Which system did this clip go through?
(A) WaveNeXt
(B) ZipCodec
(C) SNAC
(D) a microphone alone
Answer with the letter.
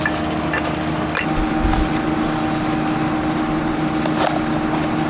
D